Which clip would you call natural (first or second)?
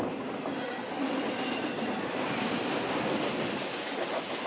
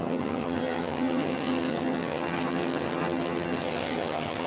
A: first